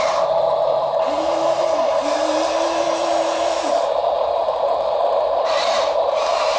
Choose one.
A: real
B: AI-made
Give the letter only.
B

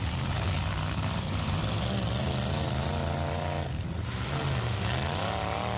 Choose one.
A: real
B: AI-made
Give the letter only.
A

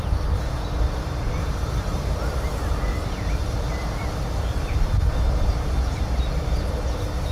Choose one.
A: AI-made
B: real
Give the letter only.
A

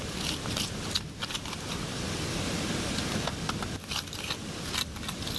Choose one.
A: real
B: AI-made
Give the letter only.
A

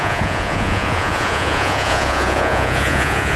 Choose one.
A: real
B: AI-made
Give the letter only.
B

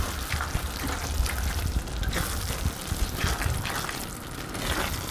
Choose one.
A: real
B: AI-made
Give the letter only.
A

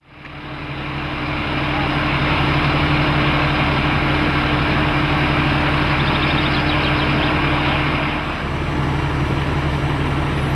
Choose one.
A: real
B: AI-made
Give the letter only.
A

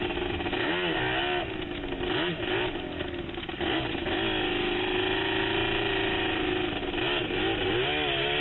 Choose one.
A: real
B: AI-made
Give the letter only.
A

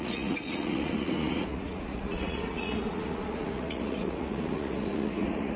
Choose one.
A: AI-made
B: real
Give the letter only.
A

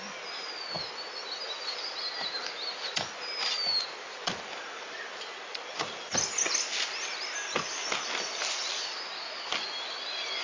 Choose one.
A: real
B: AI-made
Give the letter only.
A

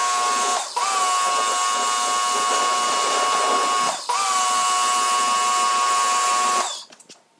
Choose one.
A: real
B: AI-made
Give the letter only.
A